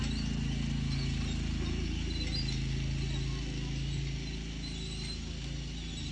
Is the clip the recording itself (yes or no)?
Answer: yes